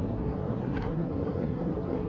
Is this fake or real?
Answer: fake